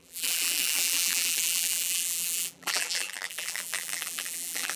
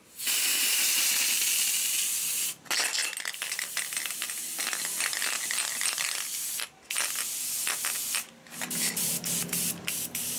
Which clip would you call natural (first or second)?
second